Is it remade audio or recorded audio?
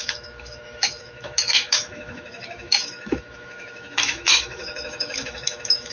remade